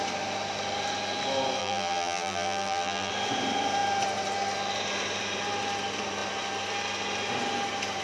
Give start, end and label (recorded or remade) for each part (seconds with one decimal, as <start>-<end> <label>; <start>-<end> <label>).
0.0-1.6 recorded; 1.6-3.1 remade; 3.1-8.0 recorded